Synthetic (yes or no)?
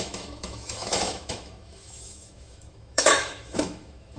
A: yes